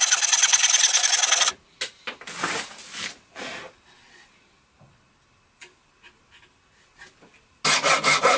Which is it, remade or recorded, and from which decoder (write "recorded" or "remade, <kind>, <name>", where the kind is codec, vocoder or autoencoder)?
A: recorded